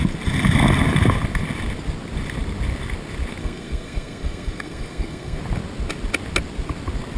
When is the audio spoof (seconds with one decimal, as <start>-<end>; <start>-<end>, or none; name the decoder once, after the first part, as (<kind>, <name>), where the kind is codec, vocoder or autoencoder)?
3.4-5.4 (codec, SNAC)